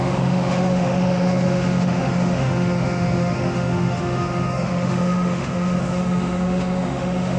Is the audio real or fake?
fake